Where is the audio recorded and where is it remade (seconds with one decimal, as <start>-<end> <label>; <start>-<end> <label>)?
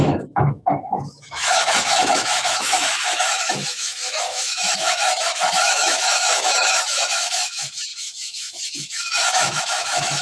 0.0-10.2 remade